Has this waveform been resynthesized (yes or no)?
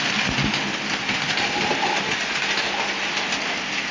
no